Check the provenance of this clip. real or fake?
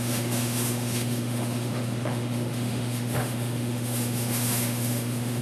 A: fake